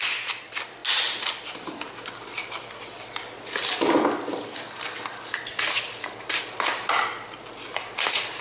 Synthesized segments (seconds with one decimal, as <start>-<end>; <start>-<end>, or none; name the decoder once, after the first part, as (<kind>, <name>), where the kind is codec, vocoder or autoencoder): none

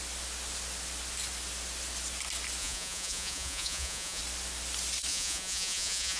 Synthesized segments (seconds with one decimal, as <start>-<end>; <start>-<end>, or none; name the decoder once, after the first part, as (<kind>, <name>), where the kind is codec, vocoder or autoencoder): 2.6-4.2 (vocoder, Vocos); 5.1-6.2

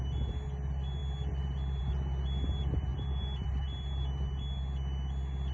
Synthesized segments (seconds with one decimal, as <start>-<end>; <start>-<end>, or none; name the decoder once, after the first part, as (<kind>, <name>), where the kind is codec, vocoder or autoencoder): none

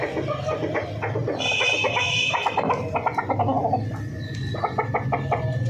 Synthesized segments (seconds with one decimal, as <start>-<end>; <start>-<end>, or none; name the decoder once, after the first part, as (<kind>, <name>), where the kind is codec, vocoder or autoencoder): none

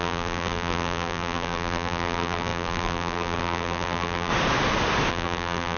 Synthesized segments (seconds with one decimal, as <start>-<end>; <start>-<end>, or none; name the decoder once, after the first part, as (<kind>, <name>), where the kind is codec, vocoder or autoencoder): 0.0-4.3 (vocoder, BigVGAN v2); 5.1-5.8

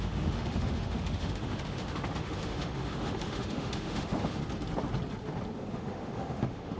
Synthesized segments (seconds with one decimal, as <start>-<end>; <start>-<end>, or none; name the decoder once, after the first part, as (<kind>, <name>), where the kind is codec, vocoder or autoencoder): 0.0-4.4 (autoencoder, DAC-VAE); 5.7-6.8